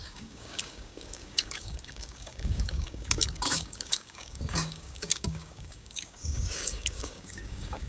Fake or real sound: fake